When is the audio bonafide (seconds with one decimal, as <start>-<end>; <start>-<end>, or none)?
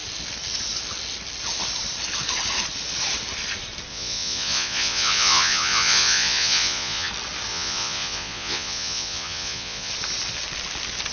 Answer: 0.0-3.9; 7.1-7.5; 9.9-11.1